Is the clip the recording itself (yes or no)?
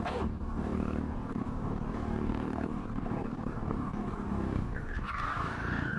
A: no